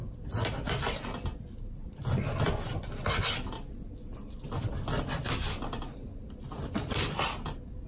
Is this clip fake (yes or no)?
no